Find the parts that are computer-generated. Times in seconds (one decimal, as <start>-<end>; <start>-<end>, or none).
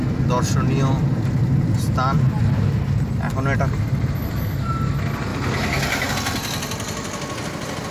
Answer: 1.0-1.9; 5.3-6.1